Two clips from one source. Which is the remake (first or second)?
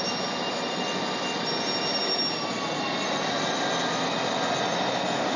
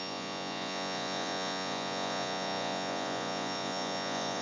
second